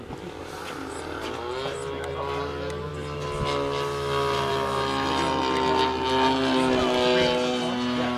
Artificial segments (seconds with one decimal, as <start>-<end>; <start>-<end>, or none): none